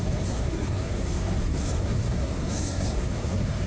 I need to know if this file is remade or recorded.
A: remade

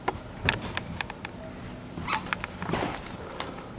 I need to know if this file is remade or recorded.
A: recorded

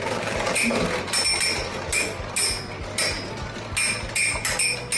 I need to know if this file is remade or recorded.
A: recorded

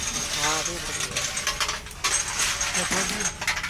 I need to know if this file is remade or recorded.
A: recorded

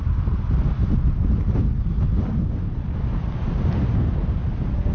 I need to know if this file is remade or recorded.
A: recorded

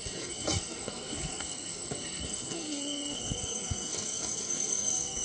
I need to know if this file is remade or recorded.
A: remade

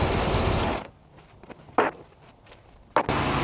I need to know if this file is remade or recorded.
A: recorded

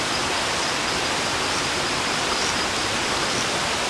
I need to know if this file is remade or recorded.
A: recorded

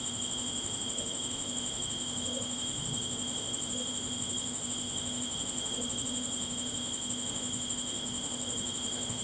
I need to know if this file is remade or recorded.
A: remade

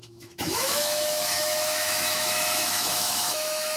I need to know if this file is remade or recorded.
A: remade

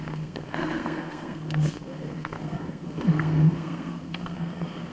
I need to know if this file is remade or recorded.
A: remade